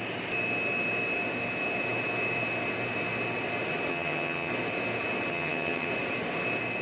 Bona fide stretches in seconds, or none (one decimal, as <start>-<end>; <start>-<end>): 0.0-3.9; 4.5-5.3; 5.9-6.8